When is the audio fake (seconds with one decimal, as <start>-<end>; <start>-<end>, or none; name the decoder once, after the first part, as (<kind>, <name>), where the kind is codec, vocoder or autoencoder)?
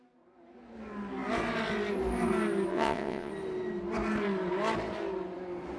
2.7-3.3 (vocoder, WaveNeXt)